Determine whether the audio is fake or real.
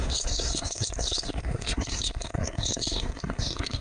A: fake